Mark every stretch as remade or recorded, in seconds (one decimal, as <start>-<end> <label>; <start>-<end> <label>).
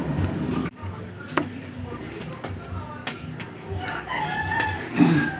0.0-0.6 recorded; 0.6-2.2 remade; 2.2-3.0 recorded; 3.0-5.4 remade